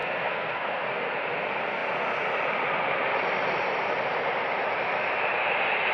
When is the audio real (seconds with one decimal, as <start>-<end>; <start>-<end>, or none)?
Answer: 0.9-5.9